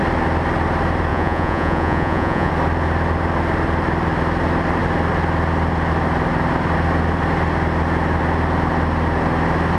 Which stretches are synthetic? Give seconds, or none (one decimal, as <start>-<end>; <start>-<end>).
1.1-2.5